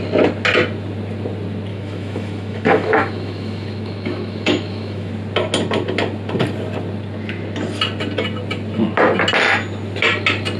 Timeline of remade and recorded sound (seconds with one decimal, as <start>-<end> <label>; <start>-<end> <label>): 0.0-1.7 recorded; 1.7-5.1 remade; 5.1-10.6 recorded